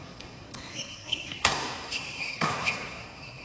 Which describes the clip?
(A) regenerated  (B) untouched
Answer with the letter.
A